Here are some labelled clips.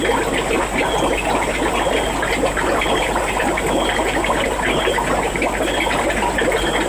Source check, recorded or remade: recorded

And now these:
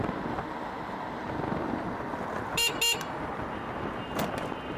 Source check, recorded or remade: recorded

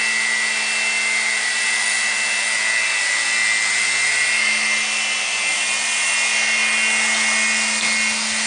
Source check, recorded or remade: recorded